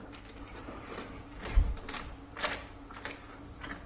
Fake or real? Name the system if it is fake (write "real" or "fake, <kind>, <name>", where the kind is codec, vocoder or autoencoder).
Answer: fake, vocoder, BigVGAN v2